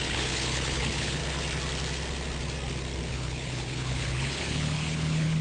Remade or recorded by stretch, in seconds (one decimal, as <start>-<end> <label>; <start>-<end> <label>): 0.0-1.2 remade; 1.2-3.1 recorded; 3.1-5.4 remade